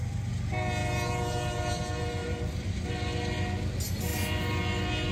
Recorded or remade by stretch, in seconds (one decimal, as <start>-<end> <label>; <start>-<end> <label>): 0.0-0.8 recorded; 0.8-1.8 remade; 1.8-2.2 recorded; 2.2-2.9 remade; 2.9-5.1 recorded